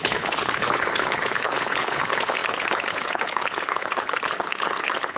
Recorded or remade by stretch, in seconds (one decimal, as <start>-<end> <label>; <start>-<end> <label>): 0.0-5.2 remade